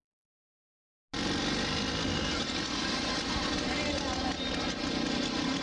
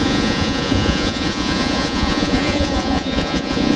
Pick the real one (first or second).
first